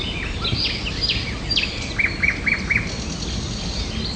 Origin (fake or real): real